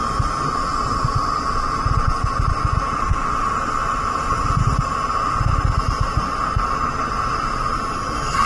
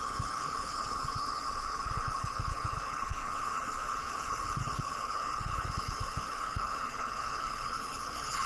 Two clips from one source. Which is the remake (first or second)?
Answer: second